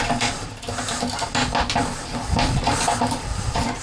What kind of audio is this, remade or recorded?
recorded